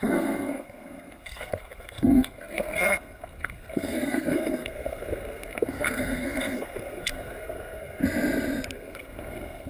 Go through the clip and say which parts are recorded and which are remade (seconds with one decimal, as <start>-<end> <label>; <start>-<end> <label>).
0.0-8.0 remade; 8.0-8.7 recorded; 8.7-9.7 remade